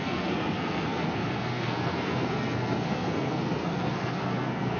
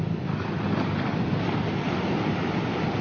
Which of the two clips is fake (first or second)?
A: first